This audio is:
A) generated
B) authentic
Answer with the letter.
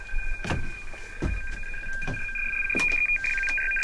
B